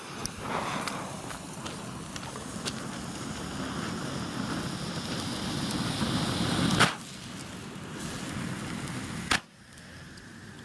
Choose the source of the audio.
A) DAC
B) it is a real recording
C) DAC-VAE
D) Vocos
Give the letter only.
B